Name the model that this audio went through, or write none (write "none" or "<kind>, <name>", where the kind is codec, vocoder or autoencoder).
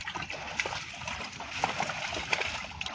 vocoder, BigVGAN v2